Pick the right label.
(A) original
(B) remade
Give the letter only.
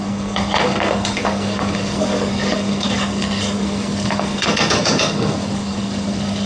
B